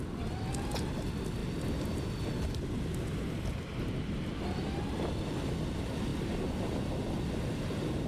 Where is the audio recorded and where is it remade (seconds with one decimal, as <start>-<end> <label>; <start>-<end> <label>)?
0.0-8.1 recorded